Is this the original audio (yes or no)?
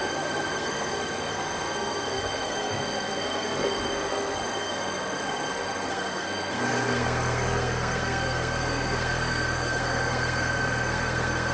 no